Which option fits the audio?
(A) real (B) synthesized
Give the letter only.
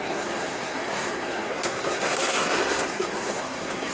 B